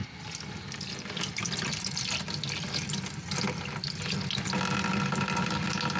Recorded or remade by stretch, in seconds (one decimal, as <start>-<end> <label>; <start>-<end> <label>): 0.0-6.0 recorded